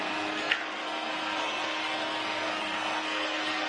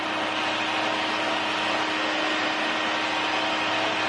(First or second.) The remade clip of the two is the first